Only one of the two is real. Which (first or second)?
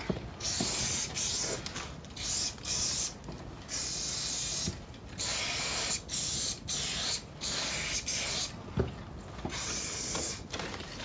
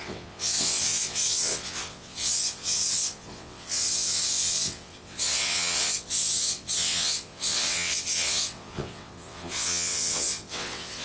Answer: first